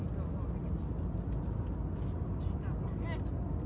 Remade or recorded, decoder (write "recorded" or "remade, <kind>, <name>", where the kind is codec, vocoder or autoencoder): recorded